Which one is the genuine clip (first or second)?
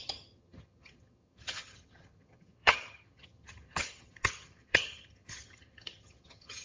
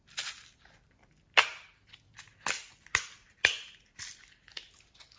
second